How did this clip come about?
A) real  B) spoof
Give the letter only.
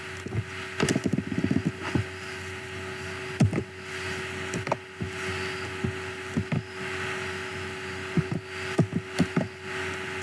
A